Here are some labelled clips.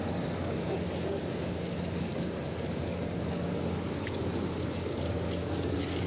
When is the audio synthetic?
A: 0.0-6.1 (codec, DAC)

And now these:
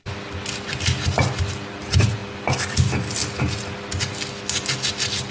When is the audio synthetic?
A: none

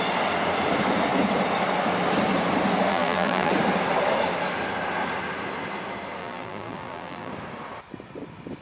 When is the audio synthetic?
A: 2.9-3.5 (vocoder, BigVGAN v2); 6.2-7.3

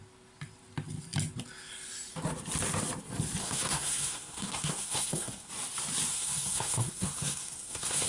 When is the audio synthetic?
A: 3.4-5.5 (codec, SNAC); 6.1-8.1

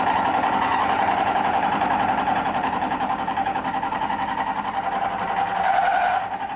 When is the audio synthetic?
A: 0.7-4.1 (vocoder, BigVGAN v2)

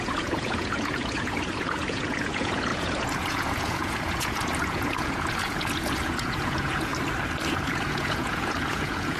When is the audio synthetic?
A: 0.0-6.9 (vocoder, Vocos); 7.5-9.2

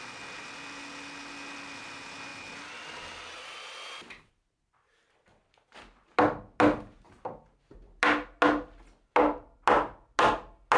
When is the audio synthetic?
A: none

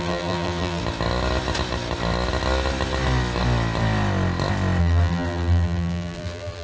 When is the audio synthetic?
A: 0.0-0.8 (vocoder, BigVGAN v2); 4.8-6.6